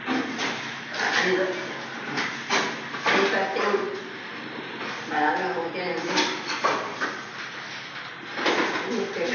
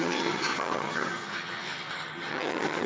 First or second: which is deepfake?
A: second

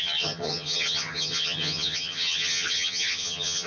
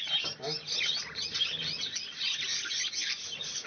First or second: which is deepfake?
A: first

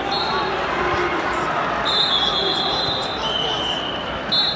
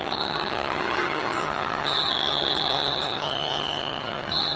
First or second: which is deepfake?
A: second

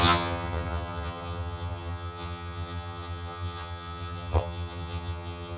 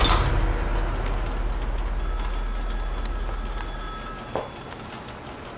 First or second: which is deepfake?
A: first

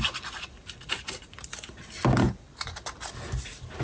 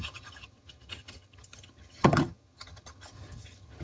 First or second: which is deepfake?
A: second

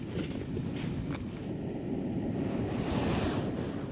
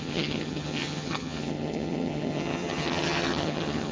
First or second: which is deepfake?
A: second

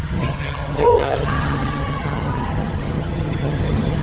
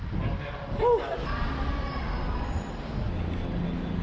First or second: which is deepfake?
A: first